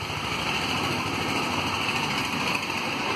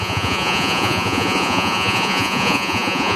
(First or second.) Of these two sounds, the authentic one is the first